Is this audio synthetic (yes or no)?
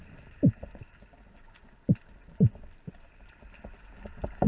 no